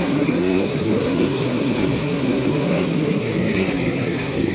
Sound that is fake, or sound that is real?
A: fake